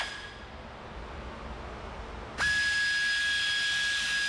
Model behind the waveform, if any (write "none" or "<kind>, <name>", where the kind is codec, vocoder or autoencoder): none